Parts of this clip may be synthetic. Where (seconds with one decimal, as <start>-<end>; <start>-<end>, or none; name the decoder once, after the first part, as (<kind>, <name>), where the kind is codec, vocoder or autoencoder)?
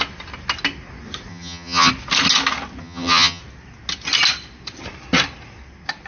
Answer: 1.3-1.9 (vocoder, HiFi-GAN); 2.8-3.4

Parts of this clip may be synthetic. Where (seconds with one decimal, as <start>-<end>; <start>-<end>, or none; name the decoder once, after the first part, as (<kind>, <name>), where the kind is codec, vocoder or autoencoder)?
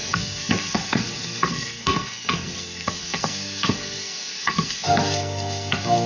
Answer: 0.0-6.1 (codec, SNAC)